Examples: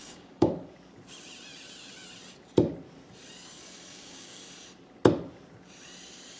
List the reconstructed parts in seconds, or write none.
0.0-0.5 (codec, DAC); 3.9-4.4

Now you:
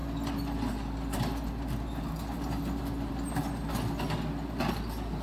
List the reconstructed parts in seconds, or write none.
none

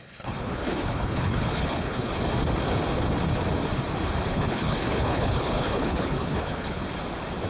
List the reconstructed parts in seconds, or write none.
0.0-2.1 (codec, HILCodec); 4.3-6.8